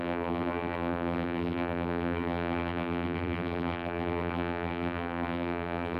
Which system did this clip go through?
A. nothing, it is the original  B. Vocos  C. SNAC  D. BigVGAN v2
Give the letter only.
D